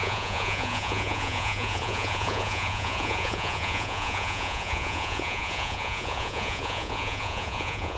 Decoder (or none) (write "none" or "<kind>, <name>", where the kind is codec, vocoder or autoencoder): vocoder, Vocos